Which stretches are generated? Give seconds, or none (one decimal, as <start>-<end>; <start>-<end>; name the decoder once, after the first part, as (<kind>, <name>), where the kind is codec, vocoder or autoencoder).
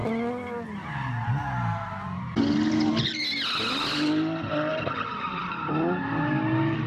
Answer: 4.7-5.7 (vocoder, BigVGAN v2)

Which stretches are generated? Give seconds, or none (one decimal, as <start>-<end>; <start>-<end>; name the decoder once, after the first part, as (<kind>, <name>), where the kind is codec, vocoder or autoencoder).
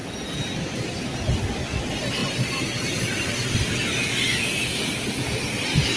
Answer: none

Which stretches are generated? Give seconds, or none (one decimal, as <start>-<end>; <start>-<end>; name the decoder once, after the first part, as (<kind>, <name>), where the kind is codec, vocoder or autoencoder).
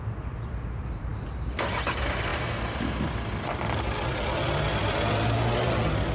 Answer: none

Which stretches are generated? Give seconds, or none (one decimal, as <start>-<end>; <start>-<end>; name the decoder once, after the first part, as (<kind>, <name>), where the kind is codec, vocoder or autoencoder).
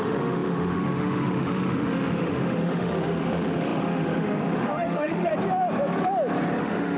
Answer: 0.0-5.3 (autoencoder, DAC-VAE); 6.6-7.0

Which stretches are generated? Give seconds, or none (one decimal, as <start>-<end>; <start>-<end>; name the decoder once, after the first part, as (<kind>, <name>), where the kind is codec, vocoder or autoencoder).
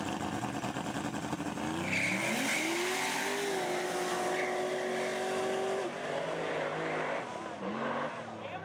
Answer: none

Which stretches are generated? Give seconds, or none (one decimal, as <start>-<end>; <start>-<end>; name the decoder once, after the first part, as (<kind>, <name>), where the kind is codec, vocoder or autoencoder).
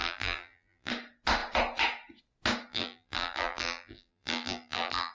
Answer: 0.0-0.9 (vocoder, BigVGAN v2); 2.7-5.1